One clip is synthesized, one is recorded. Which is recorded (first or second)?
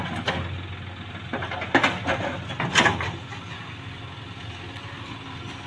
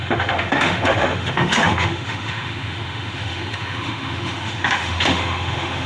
first